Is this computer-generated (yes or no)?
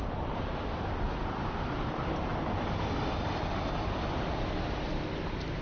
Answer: no